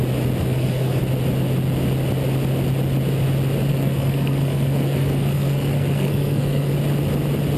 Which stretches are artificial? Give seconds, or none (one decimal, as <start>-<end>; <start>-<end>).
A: 0.4-1.0; 3.7-6.7